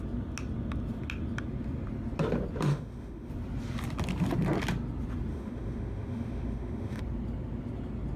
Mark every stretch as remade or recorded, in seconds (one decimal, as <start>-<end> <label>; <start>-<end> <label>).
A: 0.0-2.7 recorded; 2.7-3.3 remade; 3.3-5.3 recorded; 5.3-7.0 remade; 7.0-8.2 recorded